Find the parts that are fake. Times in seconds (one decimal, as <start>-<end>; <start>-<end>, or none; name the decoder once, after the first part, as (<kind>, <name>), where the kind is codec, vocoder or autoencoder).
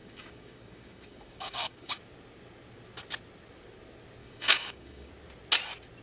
0.0-2.0 (codec, DAC); 4.2-5.1